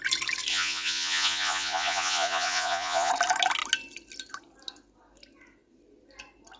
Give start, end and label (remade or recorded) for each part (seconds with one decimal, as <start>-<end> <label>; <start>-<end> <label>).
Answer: 0.0-0.5 recorded; 0.5-3.1 remade; 3.1-6.6 recorded